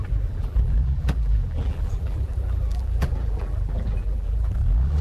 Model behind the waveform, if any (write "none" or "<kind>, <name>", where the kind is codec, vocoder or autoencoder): vocoder, BigVGAN v2